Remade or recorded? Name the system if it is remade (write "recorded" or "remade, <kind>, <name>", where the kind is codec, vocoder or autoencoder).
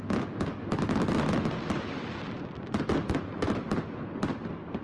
recorded